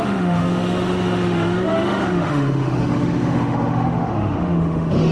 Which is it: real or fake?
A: fake